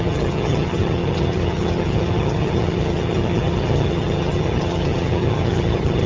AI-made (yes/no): yes